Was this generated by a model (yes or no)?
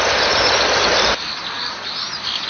no